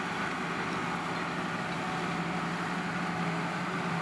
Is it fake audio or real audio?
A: real